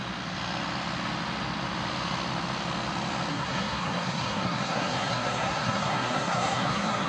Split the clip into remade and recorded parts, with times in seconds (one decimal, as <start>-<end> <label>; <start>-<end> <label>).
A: 0.0-3.3 recorded; 3.3-7.1 remade